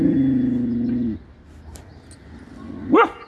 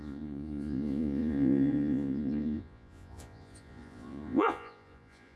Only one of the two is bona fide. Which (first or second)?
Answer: first